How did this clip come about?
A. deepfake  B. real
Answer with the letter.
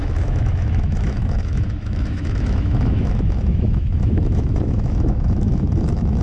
A